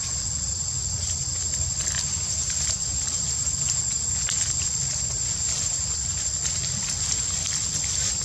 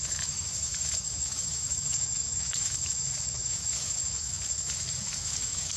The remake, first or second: second